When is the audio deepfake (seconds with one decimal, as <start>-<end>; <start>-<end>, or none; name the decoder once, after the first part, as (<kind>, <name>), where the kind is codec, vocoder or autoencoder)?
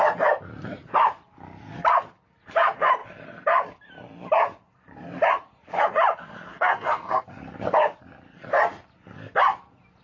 6.5-7.2 (codec, SNAC)